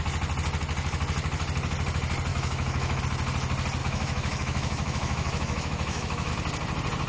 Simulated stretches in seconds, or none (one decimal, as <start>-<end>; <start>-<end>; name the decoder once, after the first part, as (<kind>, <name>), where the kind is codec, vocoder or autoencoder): 2.3-3.0 (autoencoder, DAC-VAE); 3.8-6.3